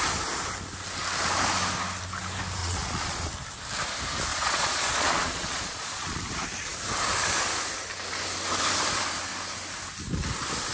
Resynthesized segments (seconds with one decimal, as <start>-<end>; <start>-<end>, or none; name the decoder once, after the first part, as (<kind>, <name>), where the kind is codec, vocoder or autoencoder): 2.6-3.3 (vocoder, Vocos); 4.3-6.2